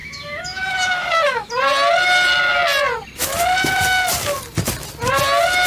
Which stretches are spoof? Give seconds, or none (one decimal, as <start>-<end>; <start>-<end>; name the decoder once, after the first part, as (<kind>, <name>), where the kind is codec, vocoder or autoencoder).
0.0-1.5 (autoencoder, DAC-VAE)